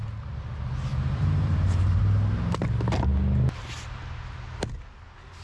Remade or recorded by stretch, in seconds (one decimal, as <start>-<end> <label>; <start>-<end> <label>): 0.0-0.9 recorded; 0.9-2.0 remade; 2.0-5.4 recorded